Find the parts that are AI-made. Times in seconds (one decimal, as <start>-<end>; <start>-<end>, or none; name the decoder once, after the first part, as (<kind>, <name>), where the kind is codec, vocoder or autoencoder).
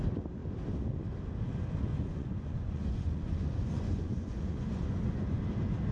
1.9-5.4 (vocoder, Vocos)